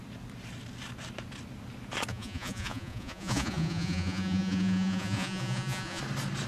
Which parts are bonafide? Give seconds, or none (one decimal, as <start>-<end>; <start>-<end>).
0.0-2.1; 6.0-6.5